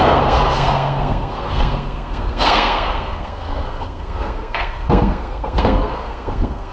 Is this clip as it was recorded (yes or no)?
no